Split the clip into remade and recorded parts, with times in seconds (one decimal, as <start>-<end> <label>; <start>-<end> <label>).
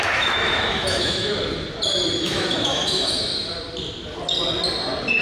0.0-1.3 remade; 1.3-2.2 recorded; 2.2-3.3 remade; 3.3-5.2 recorded